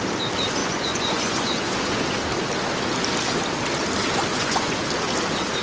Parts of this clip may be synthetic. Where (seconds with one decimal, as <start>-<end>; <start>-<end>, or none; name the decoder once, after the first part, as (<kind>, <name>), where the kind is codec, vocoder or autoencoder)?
0.6-2.0 (vocoder, Vocos); 4.3-4.8